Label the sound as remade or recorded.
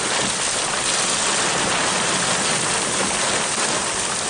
recorded